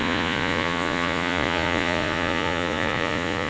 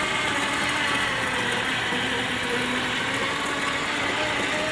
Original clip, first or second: second